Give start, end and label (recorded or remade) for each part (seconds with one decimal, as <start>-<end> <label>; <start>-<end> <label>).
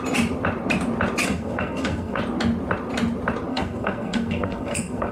0.0-1.2 recorded; 1.2-2.2 remade; 2.2-3.5 recorded; 3.5-5.1 remade